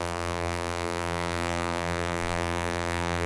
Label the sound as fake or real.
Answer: fake